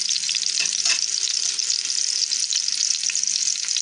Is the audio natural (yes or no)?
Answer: yes